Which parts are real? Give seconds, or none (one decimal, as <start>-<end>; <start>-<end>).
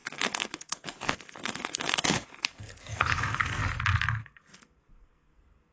3.6-4.2